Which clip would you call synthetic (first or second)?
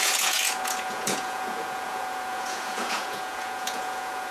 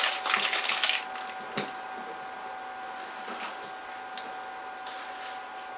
first